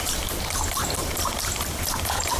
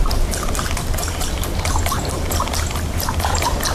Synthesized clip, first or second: first